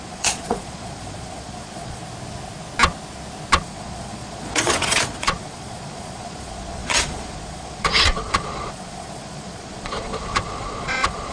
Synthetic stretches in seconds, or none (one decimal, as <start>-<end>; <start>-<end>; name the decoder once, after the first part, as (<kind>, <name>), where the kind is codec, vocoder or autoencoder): 0.0-2.0 (vocoder, Vocos); 3.6-11.3